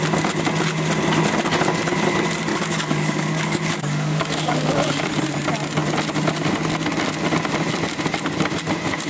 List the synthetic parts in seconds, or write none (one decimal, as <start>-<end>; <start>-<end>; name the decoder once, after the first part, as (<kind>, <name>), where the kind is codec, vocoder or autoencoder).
2.5-5.1 (codec, DAC)